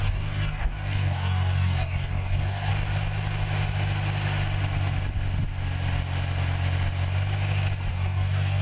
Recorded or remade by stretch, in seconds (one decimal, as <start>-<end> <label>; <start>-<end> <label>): 0.0-2.7 remade; 2.7-7.9 recorded; 7.9-8.6 remade